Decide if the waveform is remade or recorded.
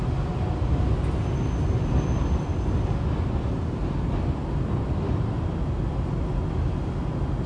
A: recorded